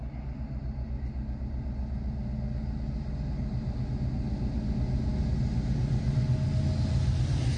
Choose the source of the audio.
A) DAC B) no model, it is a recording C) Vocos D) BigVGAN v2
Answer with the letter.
B